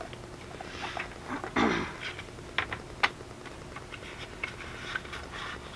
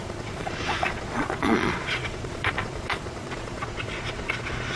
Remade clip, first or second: second